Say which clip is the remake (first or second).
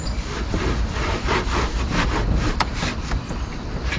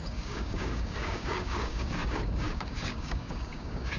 second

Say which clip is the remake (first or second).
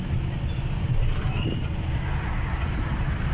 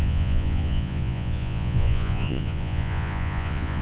second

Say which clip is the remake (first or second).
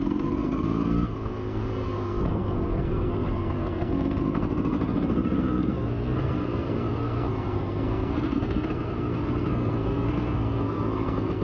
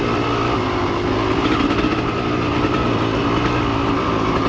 first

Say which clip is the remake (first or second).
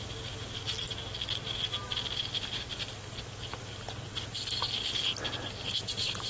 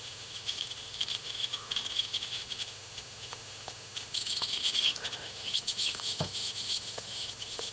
second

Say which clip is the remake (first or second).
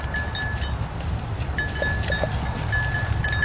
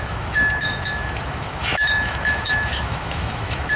second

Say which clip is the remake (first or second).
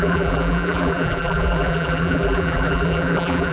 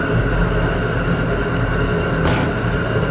first